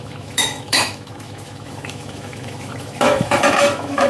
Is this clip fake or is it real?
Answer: fake